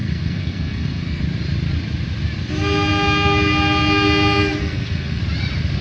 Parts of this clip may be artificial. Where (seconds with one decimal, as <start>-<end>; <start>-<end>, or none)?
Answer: 0.0-1.2; 4.6-5.2

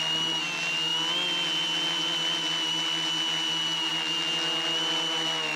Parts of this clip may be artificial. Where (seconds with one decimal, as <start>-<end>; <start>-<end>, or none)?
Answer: none

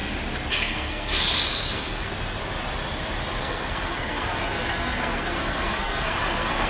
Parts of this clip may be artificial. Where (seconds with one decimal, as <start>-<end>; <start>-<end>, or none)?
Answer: 0.5-2.1; 3.4-6.7